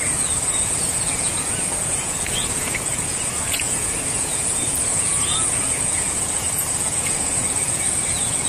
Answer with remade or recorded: remade